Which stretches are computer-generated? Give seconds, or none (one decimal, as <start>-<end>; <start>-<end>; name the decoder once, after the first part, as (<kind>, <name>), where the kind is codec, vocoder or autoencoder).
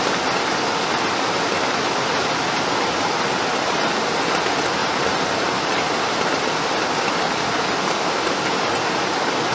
none